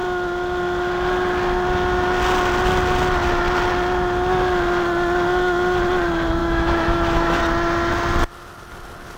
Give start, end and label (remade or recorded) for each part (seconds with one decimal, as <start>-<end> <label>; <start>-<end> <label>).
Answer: 0.0-6.4 recorded; 6.4-7.4 remade; 7.4-9.2 recorded